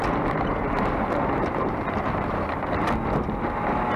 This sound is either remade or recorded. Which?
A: recorded